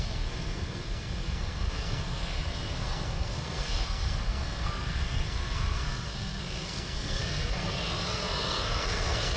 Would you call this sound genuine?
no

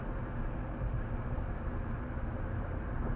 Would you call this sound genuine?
yes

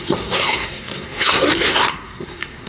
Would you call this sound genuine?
no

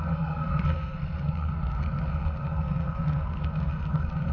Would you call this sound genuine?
no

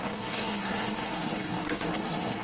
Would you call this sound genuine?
no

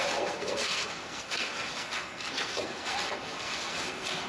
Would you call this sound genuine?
no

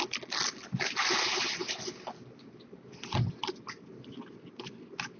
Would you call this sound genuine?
yes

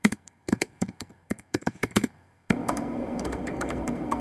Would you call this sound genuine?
no